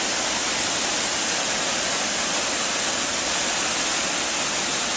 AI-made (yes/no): no